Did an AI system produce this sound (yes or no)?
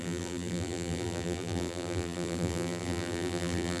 yes